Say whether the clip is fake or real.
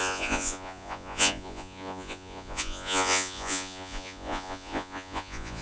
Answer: fake